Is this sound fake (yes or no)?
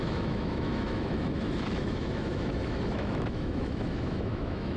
yes